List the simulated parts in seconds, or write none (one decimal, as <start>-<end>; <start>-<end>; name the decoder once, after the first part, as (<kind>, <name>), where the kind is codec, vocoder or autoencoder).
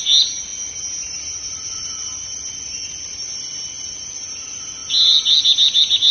none